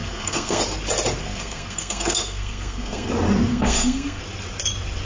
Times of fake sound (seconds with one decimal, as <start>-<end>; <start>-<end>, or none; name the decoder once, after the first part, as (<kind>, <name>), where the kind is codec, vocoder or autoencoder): 0.0-0.6 (codec, SNAC); 1.2-3.1; 3.5-4.2